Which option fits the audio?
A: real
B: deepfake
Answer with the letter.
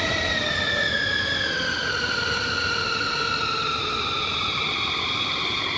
B